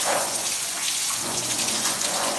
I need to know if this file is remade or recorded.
remade